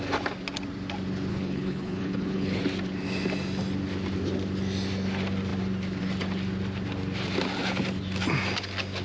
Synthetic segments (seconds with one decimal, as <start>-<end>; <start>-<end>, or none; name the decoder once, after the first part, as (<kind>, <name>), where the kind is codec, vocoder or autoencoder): 1.3-2.6 (codec, HILCodec)